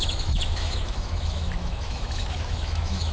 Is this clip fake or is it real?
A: fake